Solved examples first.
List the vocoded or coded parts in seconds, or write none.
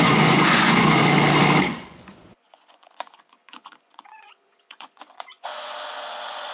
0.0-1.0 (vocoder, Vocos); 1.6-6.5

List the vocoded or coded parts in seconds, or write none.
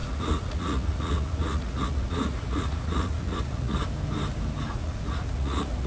0.0-3.8 (vocoder, Vocos); 4.7-5.9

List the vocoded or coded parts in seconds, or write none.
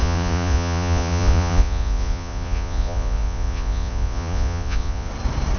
0.0-5.1 (vocoder, Vocos)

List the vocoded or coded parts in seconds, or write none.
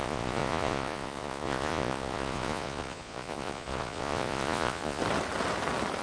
0.0-5.0 (vocoder, Vocos)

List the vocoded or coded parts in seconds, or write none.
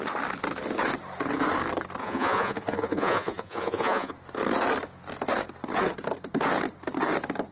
2.0-4.1 (vocoder, Vocos)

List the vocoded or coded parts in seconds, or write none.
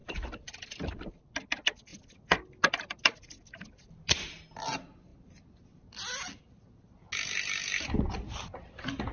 none